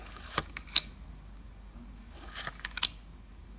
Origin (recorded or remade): remade